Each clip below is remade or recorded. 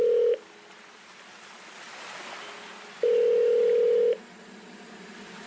recorded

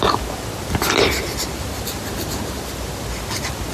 recorded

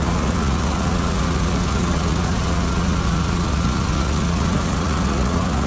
remade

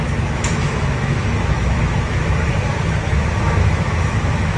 remade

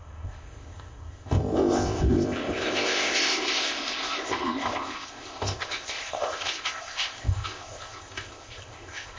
remade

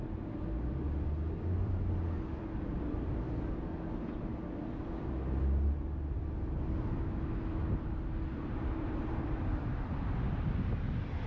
recorded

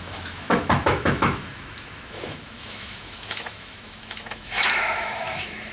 remade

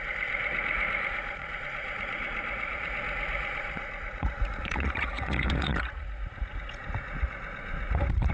remade